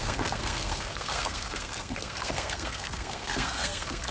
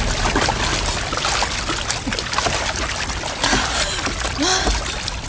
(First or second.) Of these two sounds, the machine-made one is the first